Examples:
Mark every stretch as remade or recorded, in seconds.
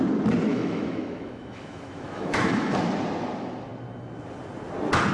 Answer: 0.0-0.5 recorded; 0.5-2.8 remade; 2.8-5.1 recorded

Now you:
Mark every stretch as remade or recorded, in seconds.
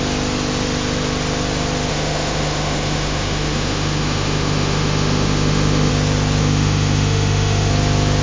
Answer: 0.0-1.9 recorded; 1.9-5.9 remade; 5.9-6.4 recorded; 6.4-7.7 remade; 7.7-8.2 recorded